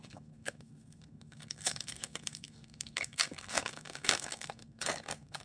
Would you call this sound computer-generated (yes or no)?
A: yes